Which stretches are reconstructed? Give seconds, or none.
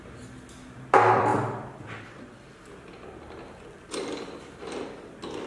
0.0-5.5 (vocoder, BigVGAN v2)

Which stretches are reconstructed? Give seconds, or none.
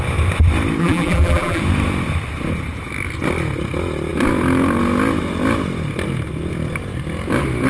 0.8-1.6 (vocoder, BigVGAN v2)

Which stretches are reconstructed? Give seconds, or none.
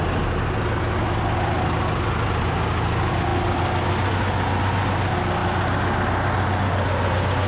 none